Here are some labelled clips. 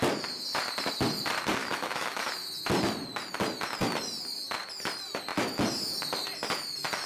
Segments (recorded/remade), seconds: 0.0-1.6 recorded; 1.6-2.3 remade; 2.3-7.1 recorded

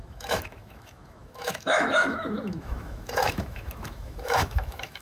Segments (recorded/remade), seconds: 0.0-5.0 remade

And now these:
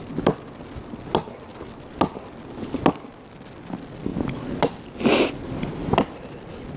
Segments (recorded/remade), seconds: 0.0-6.8 recorded